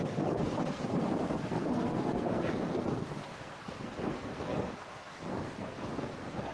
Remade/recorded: remade